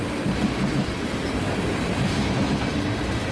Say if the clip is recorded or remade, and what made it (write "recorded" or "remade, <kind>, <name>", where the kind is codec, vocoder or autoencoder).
recorded